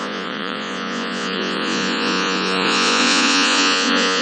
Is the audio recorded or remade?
remade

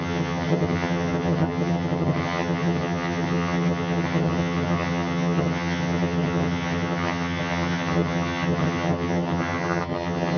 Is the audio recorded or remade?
remade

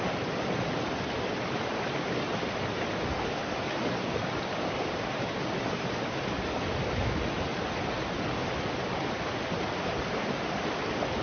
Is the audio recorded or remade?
recorded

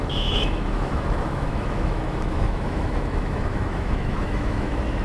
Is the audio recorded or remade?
remade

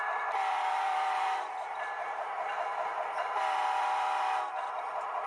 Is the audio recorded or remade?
remade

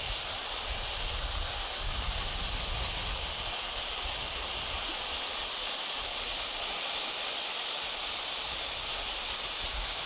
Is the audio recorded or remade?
recorded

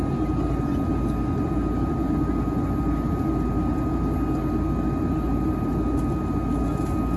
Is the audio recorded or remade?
recorded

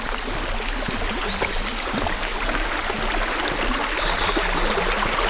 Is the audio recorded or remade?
recorded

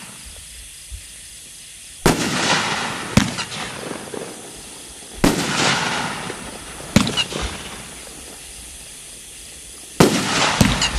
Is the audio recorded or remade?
recorded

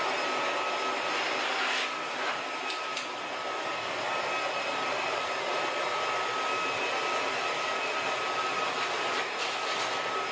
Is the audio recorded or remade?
recorded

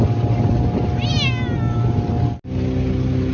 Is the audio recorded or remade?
recorded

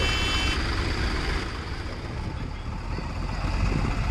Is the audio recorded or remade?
recorded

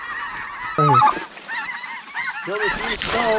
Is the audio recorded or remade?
recorded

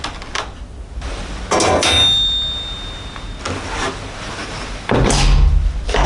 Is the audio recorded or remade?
recorded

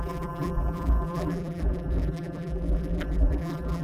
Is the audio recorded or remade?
remade